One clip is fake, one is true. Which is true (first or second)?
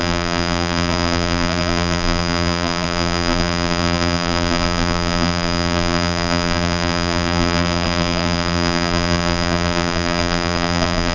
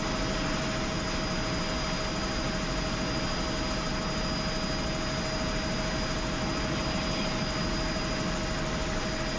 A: second